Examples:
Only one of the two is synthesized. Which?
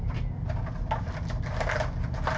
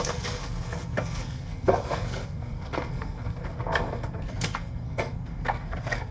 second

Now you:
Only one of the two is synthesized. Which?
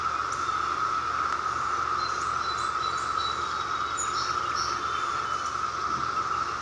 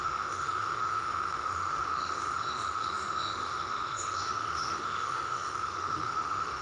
second